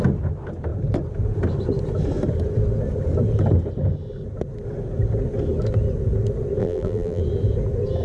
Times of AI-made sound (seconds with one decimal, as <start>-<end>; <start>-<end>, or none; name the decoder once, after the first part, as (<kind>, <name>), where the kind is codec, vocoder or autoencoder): 6.6-7.2 (vocoder, BigVGAN v2)